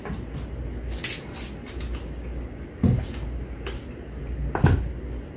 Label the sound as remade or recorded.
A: recorded